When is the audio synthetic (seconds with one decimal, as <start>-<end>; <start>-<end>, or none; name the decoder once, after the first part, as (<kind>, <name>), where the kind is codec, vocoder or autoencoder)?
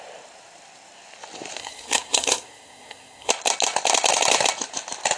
1.6-3.3 (codec, SNAC)